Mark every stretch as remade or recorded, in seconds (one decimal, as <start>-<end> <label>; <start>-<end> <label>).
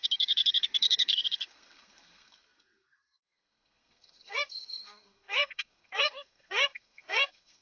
0.0-7.6 remade